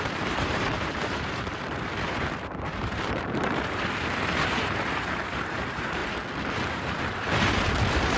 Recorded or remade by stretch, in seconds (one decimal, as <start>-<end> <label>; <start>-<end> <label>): 0.0-6.0 remade; 6.0-6.7 recorded; 6.7-8.2 remade